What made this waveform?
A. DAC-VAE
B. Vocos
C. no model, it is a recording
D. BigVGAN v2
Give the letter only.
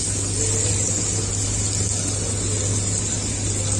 C